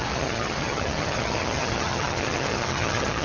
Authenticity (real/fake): fake